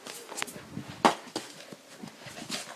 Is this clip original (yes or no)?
yes